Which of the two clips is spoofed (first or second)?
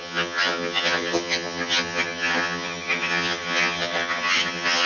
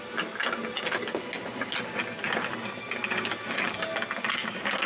first